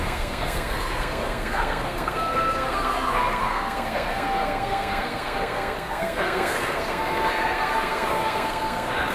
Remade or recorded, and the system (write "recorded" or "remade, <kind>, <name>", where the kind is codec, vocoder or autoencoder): remade, codec, SNAC